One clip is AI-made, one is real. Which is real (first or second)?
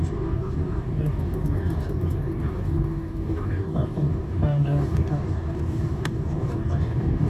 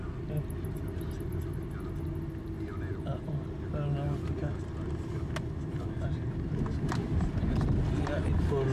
second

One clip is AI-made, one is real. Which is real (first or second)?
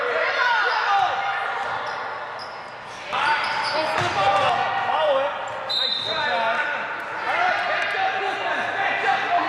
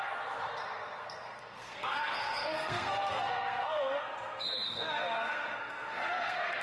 first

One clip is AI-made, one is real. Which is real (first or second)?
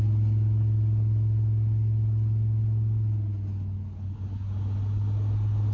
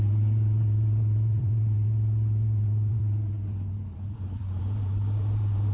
first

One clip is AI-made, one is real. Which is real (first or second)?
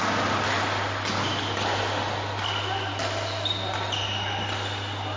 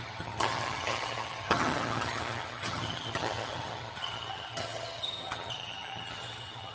first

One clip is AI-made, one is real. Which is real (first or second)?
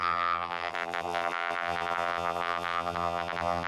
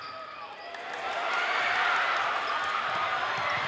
second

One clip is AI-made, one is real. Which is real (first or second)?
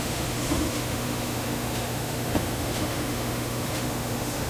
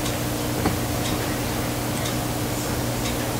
second